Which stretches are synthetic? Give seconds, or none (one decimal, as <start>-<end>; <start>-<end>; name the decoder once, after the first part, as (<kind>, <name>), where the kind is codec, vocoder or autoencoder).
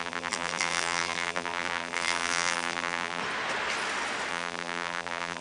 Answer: 0.0-3.2 (vocoder, BigVGAN v2); 4.3-5.4